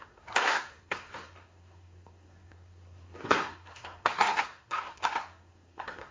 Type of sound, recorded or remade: remade